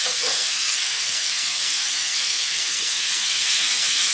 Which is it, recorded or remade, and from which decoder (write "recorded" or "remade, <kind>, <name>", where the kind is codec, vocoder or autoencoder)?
remade, codec, SNAC